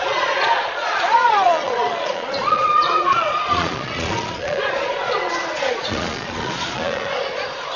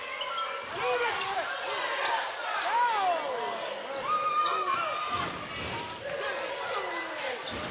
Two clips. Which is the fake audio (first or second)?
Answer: first